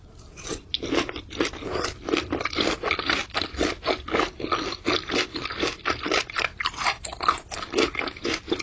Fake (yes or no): no